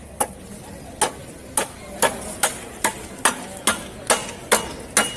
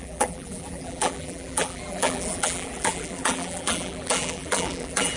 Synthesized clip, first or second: second